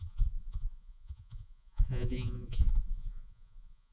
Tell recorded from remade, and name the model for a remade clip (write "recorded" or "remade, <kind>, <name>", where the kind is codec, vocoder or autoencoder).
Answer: remade, vocoder, Vocos